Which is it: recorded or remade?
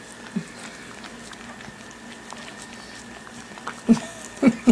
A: recorded